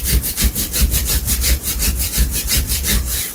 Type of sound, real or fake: fake